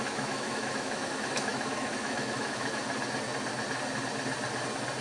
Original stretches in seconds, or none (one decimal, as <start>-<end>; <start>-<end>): 2.8-5.0